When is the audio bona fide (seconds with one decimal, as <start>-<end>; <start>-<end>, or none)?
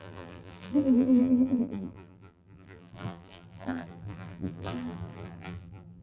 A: none